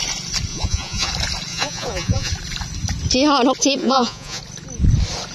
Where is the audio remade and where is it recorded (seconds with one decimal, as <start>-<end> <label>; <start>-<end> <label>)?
0.0-0.5 recorded; 0.5-1.1 remade; 1.1-1.5 recorded; 1.5-2.3 remade; 2.3-3.8 recorded; 3.8-4.4 remade; 4.4-5.3 recorded